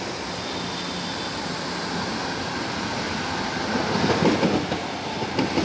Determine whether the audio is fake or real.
real